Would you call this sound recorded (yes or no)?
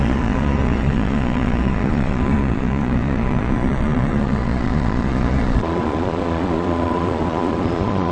no